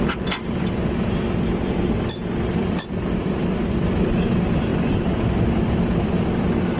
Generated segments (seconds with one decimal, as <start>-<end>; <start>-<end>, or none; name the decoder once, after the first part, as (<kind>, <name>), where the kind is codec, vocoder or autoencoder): 0.0-6.8 (vocoder, BigVGAN v2)